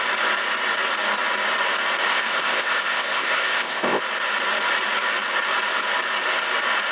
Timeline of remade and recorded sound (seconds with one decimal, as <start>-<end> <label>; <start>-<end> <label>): 0.0-2.1 recorded; 2.1-4.0 remade; 4.0-6.9 recorded